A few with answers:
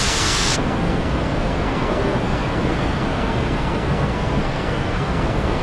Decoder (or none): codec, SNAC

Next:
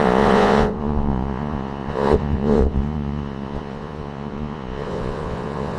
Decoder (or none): vocoder, Vocos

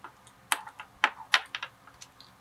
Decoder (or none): none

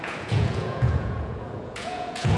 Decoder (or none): vocoder, Vocos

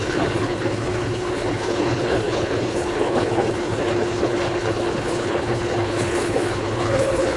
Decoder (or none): codec, HILCodec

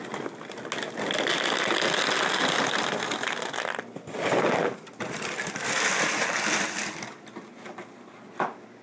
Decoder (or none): none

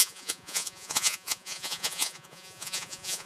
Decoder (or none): vocoder, Vocos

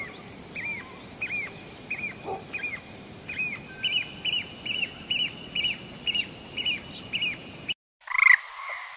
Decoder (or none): none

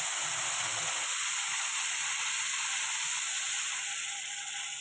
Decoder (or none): none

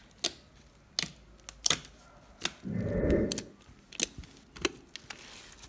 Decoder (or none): none